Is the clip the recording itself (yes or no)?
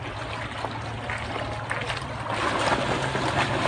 yes